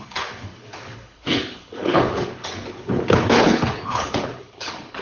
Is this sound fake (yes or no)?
yes